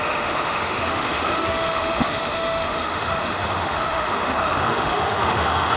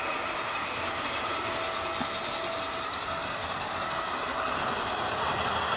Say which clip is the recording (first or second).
second